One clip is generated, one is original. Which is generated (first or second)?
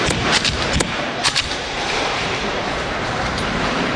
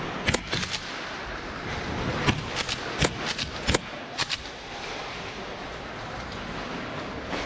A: first